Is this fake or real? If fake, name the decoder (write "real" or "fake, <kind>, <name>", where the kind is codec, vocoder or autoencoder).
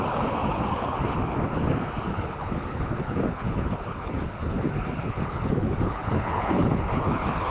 fake, codec, HILCodec